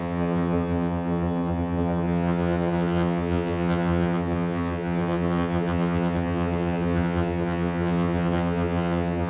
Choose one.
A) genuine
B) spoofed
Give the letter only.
B